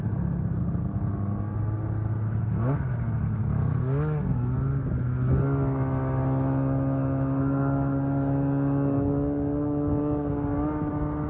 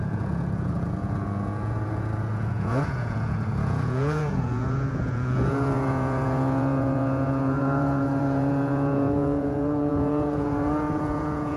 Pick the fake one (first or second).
second